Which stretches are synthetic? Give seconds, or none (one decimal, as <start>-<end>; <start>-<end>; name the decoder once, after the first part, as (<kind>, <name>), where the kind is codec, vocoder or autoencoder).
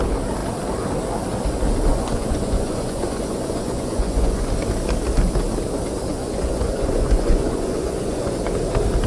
1.9-4.5 (vocoder, Vocos); 6.1-8.4